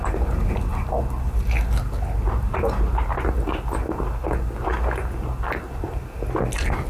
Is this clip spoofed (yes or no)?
no